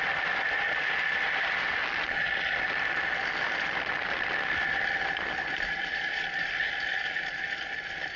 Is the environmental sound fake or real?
real